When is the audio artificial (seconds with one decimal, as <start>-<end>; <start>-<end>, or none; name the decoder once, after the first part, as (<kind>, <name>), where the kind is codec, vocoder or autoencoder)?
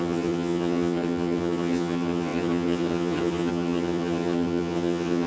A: 0.0-5.3 (vocoder, HiFi-GAN)